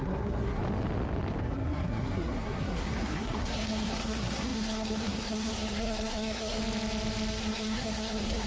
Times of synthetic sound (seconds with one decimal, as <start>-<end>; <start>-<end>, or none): 0.0-0.6; 1.4-6.6; 7.4-8.5